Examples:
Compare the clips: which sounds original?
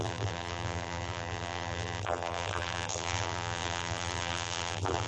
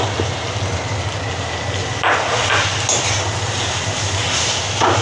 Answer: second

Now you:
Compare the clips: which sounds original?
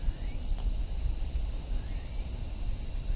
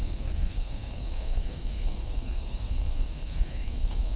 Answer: first